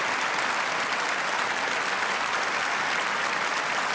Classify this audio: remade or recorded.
recorded